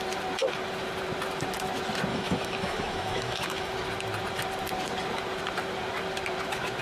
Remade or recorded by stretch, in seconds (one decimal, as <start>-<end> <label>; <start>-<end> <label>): 0.0-2.1 recorded; 2.1-3.7 remade; 3.7-6.8 recorded